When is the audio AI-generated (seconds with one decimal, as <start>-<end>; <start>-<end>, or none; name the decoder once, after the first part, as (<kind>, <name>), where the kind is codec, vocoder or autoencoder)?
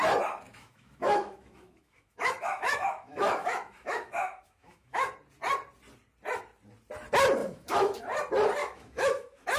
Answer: 0.5-5.1 (autoencoder, DAC-VAE); 7.4-8.0; 8.6-9.6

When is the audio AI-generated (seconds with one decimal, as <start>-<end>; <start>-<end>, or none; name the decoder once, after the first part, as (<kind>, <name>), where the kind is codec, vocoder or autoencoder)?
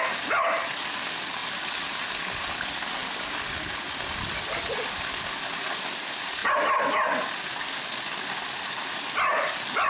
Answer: none